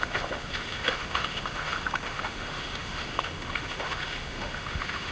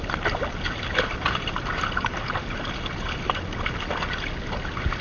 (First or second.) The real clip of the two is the second